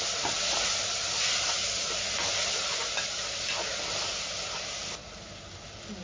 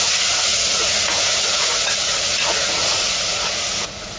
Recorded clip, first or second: first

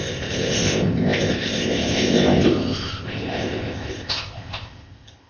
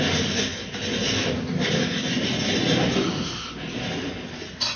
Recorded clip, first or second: second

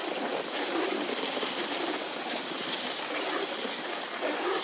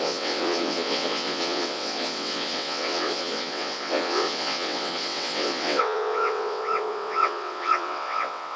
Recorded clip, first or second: first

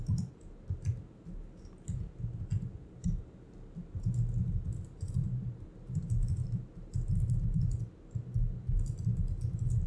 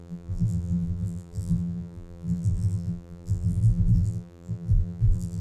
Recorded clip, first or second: first